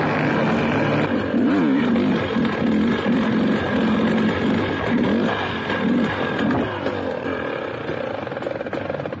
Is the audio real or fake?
real